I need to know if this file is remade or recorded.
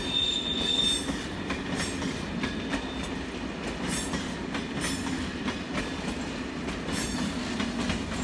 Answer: recorded